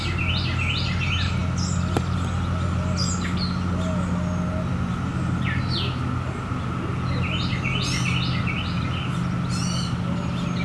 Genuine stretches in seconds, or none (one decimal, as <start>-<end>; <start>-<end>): 0.0-10.6